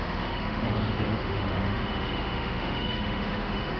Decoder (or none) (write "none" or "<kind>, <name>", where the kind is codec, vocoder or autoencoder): autoencoder, DAC-VAE